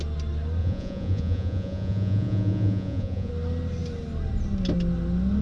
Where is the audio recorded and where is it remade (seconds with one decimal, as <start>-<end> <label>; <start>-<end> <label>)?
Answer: 0.0-0.6 recorded; 0.6-3.3 remade; 3.3-5.4 recorded